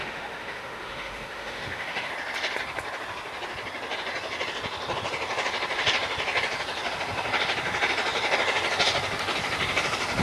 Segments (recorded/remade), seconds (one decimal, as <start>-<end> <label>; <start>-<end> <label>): 0.0-2.1 remade; 2.1-10.2 recorded